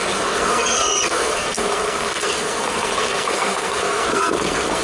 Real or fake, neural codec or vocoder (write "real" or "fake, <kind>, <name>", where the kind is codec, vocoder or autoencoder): fake, codec, SNAC